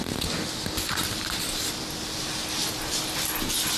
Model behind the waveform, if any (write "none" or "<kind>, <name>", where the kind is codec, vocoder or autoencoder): none